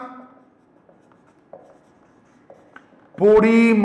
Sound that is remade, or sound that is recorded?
recorded